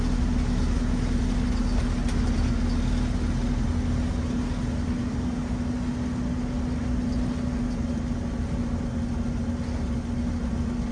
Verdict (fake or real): real